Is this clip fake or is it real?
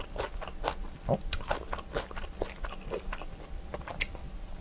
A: real